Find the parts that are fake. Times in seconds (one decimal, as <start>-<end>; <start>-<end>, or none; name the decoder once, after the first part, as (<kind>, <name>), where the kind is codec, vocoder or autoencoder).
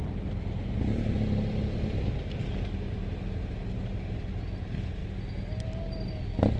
none